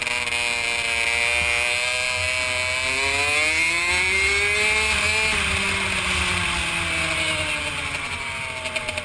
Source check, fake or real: real